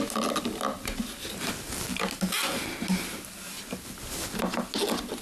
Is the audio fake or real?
real